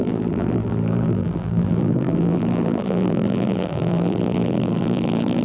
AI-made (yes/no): yes